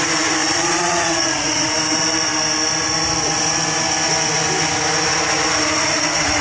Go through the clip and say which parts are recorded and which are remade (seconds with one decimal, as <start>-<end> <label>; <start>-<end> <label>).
0.0-0.4 recorded; 0.4-1.7 remade; 1.7-6.4 recorded